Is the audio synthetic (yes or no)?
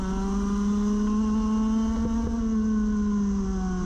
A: no